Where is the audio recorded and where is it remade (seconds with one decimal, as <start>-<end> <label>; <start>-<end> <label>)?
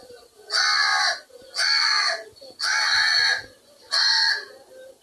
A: 0.0-5.0 recorded